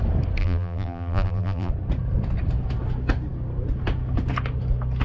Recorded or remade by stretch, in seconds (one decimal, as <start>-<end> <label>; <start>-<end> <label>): 0.0-0.4 recorded; 0.4-1.7 remade; 1.7-5.0 recorded